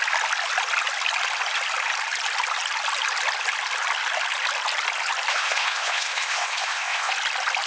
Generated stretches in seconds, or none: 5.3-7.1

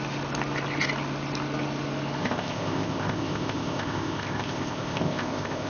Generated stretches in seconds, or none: 2.2-5.7

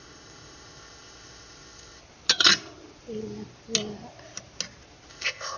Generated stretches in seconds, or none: 0.0-2.0; 5.1-5.6

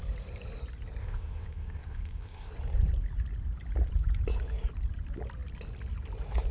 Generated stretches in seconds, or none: 1.0-2.5

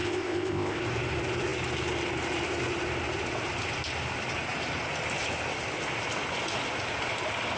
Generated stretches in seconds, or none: 0.0-0.8